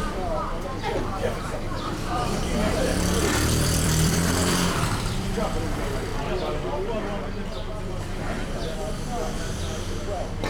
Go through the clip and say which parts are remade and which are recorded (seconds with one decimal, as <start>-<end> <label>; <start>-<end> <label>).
0.0-6.1 remade; 6.1-9.4 recorded; 9.4-10.5 remade